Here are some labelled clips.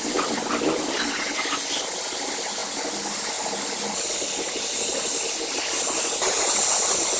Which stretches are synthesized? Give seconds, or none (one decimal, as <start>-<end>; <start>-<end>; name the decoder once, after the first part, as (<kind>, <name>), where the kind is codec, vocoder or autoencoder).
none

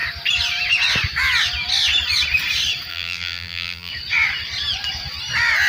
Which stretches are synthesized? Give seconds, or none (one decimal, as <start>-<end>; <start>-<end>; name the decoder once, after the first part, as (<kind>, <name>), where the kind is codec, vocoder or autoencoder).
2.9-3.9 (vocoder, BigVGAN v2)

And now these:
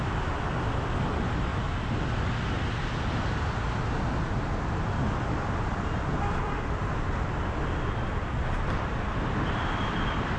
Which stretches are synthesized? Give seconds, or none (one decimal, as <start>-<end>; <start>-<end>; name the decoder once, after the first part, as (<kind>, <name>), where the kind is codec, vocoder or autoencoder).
0.0-1.5 (vocoder, BigVGAN v2); 6.1-10.4

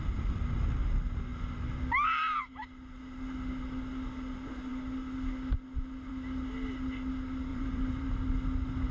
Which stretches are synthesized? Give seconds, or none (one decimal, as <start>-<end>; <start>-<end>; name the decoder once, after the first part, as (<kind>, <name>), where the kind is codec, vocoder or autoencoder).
7.5-8.1 (vocoder, BigVGAN v2)

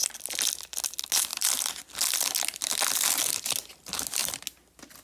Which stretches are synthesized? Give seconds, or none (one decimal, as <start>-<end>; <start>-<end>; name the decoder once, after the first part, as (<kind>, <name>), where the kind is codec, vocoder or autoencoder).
1.3-1.8 (vocoder, BigVGAN v2)

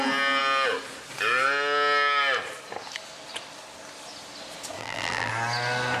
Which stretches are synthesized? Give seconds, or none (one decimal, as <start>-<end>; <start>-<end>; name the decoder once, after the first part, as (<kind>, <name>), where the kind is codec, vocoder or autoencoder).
4.8-5.3 (vocoder, BigVGAN v2)